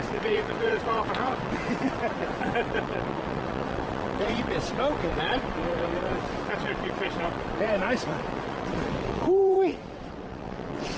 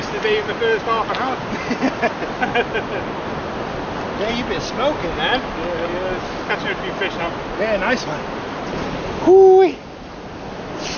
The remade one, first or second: first